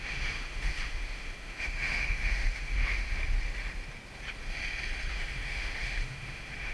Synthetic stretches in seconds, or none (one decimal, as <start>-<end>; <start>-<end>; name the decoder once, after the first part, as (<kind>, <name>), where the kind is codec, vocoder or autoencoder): 0.0-3.2 (autoencoder, DAC-VAE); 5.1-6.7